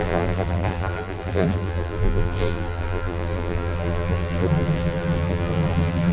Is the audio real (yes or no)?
no